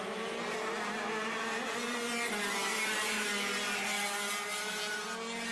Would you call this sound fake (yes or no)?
no